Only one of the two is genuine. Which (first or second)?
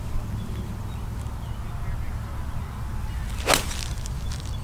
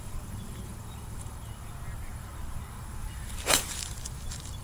first